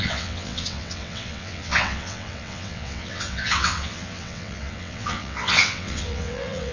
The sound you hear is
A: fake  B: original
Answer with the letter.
A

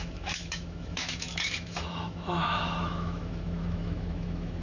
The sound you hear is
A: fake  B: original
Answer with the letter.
A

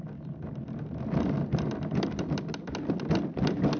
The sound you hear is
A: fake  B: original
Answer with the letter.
B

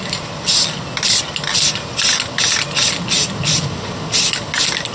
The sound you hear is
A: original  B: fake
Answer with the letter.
A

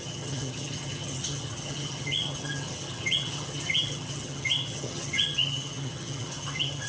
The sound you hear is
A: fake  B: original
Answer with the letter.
A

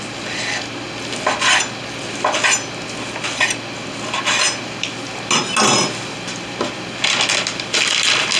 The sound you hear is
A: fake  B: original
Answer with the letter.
B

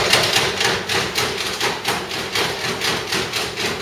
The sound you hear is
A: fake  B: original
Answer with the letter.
B